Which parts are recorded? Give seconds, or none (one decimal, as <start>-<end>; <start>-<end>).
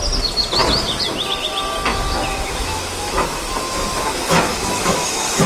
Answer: 0.0-1.9